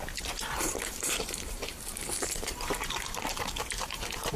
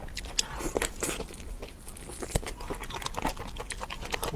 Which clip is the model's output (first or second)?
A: first